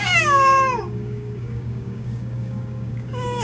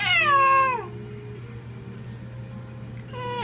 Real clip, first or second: second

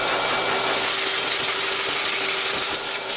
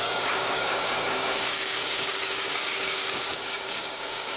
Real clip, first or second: first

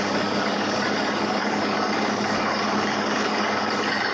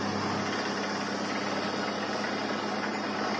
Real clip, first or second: second